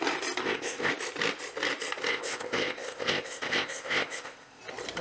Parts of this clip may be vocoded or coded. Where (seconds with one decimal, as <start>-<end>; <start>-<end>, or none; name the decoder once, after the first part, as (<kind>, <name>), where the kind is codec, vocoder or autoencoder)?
0.4-0.9 (codec, ZipCodec); 2.1-4.6